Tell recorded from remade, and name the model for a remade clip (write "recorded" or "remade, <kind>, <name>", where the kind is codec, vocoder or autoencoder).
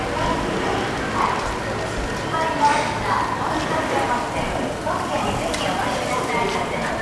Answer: recorded